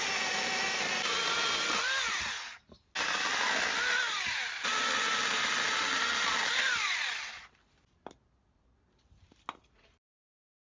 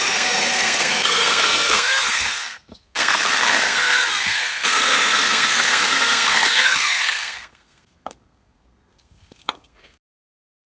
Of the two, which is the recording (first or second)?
first